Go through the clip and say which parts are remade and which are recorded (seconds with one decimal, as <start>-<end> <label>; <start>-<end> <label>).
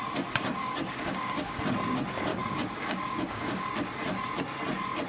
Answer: 0.0-0.6 recorded; 0.6-1.6 remade; 1.6-2.3 recorded; 2.3-3.7 remade; 3.7-5.1 recorded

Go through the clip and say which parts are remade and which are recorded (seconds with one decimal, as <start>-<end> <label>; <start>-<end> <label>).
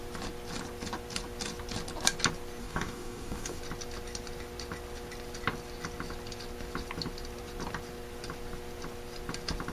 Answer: 0.0-2.6 recorded; 2.6-3.6 remade; 3.6-9.7 recorded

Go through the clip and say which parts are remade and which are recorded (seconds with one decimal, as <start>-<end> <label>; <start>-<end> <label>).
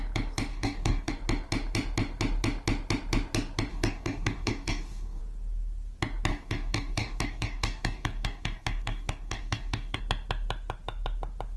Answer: 0.0-0.5 recorded; 0.5-1.1 remade; 1.1-3.7 recorded; 3.7-5.2 remade; 5.2-6.3 recorded; 6.3-10.0 remade; 10.0-11.6 recorded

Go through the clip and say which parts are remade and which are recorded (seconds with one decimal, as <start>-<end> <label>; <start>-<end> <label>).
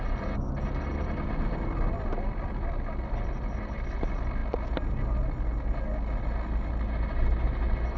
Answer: 0.0-8.0 recorded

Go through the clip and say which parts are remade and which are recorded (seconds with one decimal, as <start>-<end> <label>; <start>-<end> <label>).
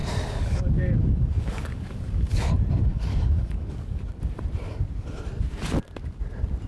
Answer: 0.0-2.5 remade; 2.5-2.9 recorded; 2.9-4.0 remade; 4.0-6.7 recorded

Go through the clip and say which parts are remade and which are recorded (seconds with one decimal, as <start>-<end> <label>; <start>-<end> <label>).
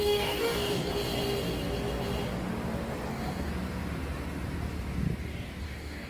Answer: 0.0-0.9 remade; 0.9-3.1 recorded; 3.1-3.5 remade; 3.5-5.6 recorded; 5.6-6.1 remade